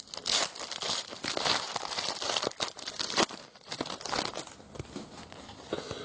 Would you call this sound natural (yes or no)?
yes